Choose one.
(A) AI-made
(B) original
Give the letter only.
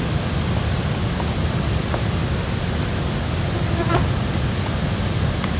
B